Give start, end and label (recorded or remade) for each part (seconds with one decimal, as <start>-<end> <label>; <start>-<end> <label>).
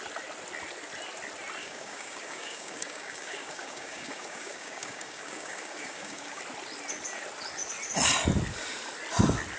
0.0-1.6 recorded; 1.6-6.4 remade; 6.4-9.6 recorded